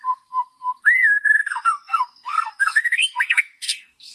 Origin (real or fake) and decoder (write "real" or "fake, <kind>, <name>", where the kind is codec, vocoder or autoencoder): fake, codec, SNAC